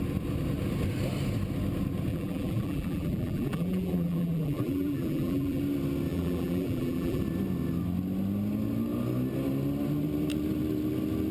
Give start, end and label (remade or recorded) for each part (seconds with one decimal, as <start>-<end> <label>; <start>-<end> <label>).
0.0-2.1 recorded; 2.1-5.6 remade; 5.6-6.1 recorded; 6.1-7.2 remade; 7.2-11.3 recorded

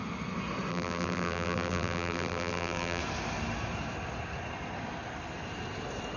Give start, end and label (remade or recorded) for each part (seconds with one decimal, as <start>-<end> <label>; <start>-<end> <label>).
0.0-0.7 recorded; 0.7-3.0 remade; 3.0-6.2 recorded

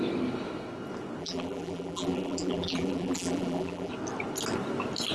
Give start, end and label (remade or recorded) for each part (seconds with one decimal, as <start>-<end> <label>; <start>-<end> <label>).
0.0-1.2 recorded; 1.2-3.9 remade; 3.9-5.1 recorded

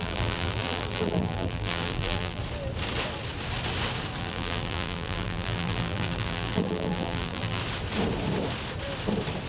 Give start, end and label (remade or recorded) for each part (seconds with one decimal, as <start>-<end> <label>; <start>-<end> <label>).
0.0-2.4 remade; 2.4-4.2 recorded; 4.2-7.6 remade; 7.6-9.5 recorded